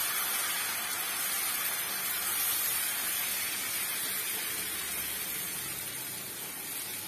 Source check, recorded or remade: recorded